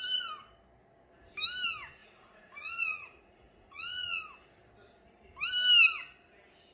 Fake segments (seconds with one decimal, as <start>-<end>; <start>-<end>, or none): 2.0-4.2